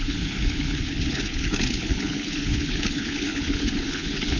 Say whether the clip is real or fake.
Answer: fake